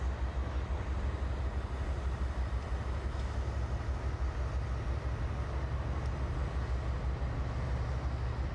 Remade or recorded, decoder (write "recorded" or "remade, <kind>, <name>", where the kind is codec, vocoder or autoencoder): recorded